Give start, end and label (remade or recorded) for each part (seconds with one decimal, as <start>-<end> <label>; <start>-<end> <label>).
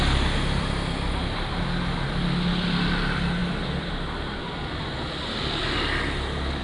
0.0-6.6 recorded